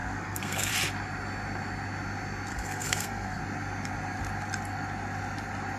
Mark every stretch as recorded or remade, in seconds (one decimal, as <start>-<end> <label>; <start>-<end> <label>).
0.0-0.7 remade; 0.7-2.5 recorded; 2.5-3.4 remade; 3.4-5.8 recorded